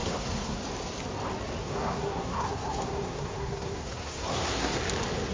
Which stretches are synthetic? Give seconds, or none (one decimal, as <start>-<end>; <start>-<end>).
0.0-0.6; 1.6-4.8

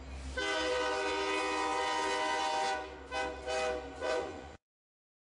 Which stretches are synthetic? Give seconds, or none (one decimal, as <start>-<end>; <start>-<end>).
4.0-4.7

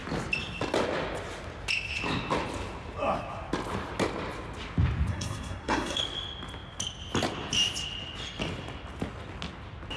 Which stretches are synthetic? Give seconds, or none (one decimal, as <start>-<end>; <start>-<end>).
5.1-6.0

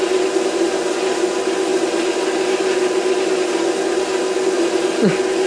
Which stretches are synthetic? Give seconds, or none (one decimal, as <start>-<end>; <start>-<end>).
none

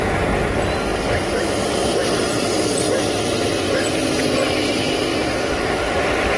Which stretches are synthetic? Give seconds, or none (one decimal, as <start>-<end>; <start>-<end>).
5.1-5.7